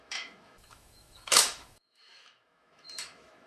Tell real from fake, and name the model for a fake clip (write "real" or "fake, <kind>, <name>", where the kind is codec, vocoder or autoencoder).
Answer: fake, autoencoder, DAC-VAE